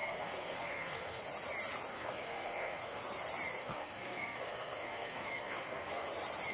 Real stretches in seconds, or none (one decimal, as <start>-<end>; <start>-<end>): 1.2-1.9; 3.0-3.6; 6.1-6.5